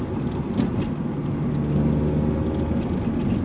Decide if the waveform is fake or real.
real